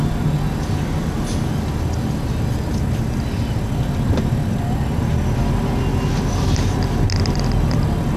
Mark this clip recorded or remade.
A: recorded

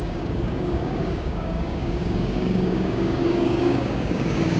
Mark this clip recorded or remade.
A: remade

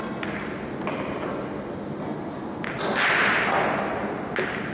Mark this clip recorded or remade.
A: recorded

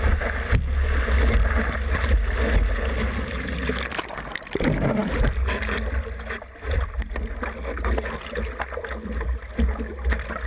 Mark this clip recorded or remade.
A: recorded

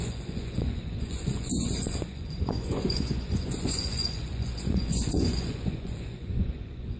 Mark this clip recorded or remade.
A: remade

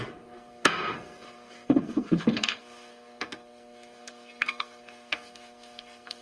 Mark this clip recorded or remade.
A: remade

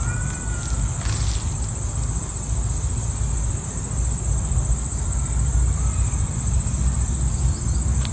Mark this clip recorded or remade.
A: recorded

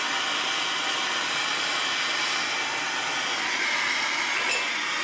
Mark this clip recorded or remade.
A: recorded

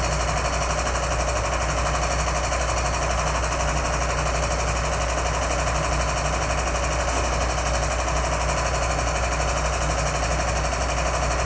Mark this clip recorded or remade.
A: recorded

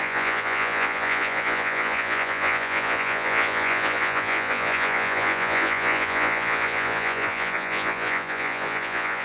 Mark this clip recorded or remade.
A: remade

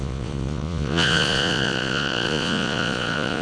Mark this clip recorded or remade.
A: remade